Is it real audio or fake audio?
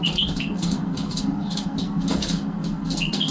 fake